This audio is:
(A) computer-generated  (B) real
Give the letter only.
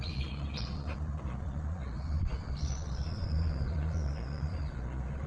A